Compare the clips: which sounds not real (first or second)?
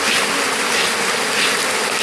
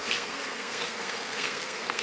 second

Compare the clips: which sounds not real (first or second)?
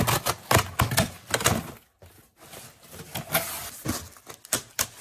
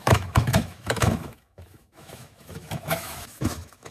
second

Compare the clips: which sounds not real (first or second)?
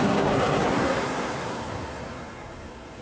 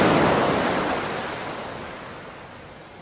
first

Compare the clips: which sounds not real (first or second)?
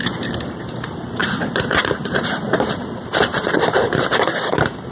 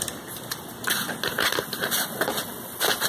first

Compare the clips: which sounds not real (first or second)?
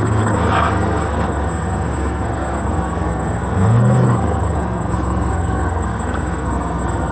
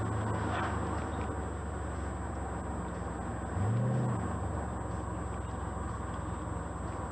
first